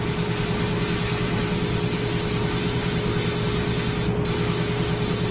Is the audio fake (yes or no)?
no